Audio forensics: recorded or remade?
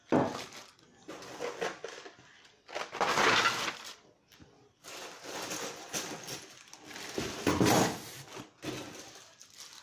recorded